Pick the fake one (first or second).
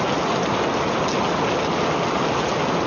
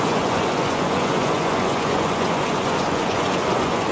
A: second